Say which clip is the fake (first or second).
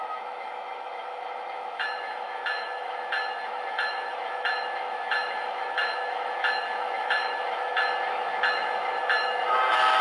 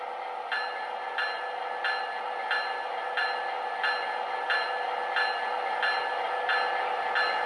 first